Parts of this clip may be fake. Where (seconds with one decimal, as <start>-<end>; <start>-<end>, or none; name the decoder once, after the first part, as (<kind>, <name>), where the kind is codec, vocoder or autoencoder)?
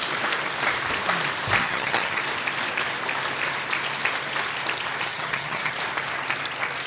1.6-2.2 (vocoder, HiFi-GAN); 5.1-5.7